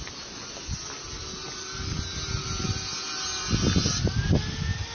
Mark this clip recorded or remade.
recorded